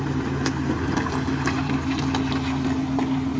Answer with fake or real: real